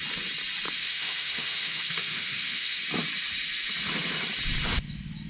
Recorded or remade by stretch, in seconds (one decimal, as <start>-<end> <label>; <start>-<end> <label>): 0.0-0.8 recorded; 0.8-2.8 remade; 2.8-5.3 recorded

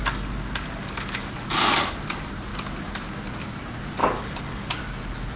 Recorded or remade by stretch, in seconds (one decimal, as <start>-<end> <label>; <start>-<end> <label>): 0.0-1.3 remade; 1.3-4.0 recorded; 4.0-4.7 remade; 4.7-5.4 recorded

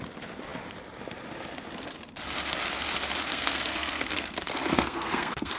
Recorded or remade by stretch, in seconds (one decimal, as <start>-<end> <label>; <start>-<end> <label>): 0.0-3.3 recorded; 3.3-5.6 remade

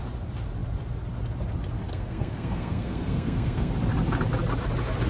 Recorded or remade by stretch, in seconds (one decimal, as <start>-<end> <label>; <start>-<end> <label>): 0.0-1.9 recorded; 1.9-3.7 remade; 3.7-5.1 recorded

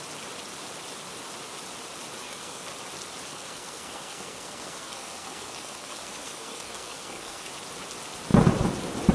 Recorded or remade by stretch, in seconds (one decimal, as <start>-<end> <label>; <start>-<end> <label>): 0.0-2.2 recorded; 2.2-2.7 remade; 2.7-3.3 recorded; 3.3-7.5 remade; 7.5-9.1 recorded